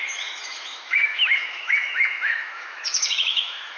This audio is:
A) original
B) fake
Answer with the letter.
B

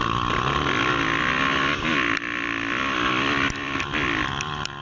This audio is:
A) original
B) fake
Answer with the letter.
A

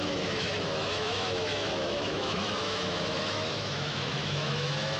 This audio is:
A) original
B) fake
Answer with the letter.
B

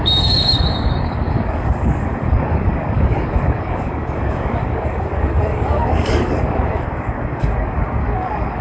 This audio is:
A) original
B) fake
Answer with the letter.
B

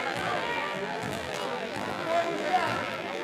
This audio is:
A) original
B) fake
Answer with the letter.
B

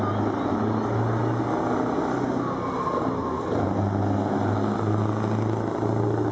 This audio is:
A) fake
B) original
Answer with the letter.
B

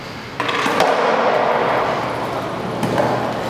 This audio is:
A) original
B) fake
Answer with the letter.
A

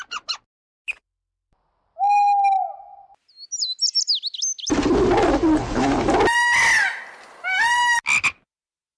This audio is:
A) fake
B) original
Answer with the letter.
B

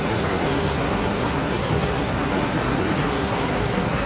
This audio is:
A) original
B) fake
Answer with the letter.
B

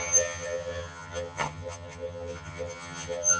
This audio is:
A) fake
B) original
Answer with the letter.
A